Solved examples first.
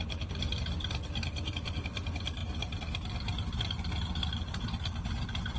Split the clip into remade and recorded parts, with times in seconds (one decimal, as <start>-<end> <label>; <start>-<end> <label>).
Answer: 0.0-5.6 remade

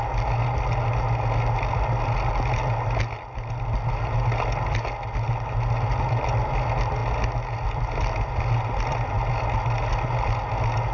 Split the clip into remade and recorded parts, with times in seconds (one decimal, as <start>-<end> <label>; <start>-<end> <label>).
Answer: 0.0-10.9 recorded

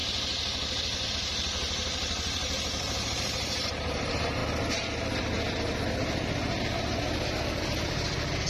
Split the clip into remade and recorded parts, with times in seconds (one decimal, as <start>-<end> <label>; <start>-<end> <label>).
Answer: 0.0-1.1 recorded; 1.1-4.4 remade; 4.4-8.5 recorded

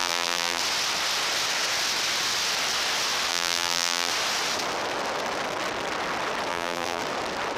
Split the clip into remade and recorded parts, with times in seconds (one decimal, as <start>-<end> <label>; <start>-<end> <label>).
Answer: 0.0-0.6 remade; 0.6-3.3 recorded; 3.3-4.1 remade; 4.1-6.5 recorded; 6.5-7.0 remade; 7.0-7.6 recorded

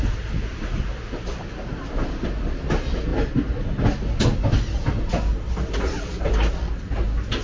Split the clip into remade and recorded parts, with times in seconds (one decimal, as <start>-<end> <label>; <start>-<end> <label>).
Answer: 0.0-7.4 recorded

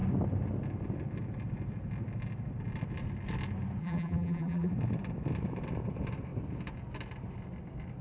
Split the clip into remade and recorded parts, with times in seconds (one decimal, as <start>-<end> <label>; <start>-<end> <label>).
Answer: 0.0-3.8 recorded; 3.8-4.7 remade; 4.7-8.0 recorded

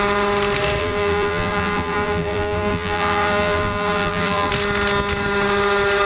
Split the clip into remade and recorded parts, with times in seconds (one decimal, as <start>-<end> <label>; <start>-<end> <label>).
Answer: 0.0-0.8 recorded; 0.8-4.5 remade; 4.5-6.1 recorded

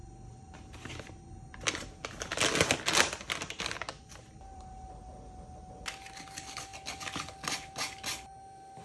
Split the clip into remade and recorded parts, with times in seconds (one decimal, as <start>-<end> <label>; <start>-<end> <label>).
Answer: 0.0-1.9 remade; 1.9-8.8 recorded